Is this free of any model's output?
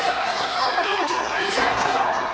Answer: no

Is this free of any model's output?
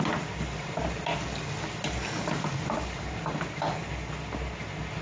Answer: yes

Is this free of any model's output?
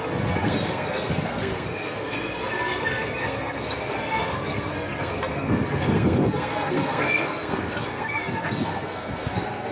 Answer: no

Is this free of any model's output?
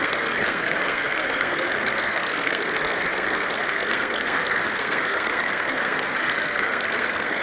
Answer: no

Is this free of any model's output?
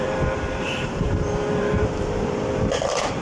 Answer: no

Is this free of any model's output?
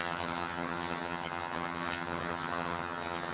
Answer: no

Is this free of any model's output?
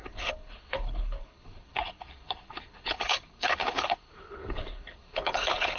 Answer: no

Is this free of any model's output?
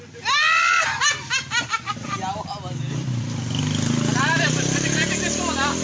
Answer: yes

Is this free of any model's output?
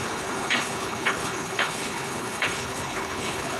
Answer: no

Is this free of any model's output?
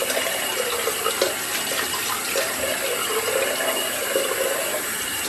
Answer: yes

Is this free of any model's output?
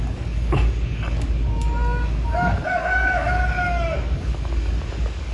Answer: no